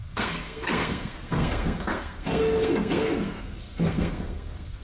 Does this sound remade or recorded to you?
remade